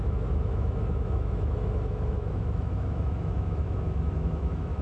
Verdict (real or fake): fake